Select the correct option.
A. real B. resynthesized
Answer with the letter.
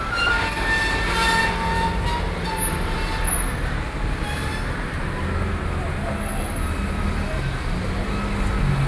A